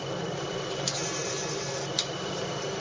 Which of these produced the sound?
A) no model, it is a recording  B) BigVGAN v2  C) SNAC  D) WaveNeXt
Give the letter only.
A